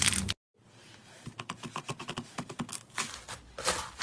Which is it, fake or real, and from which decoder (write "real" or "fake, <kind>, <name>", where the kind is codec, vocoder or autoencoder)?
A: real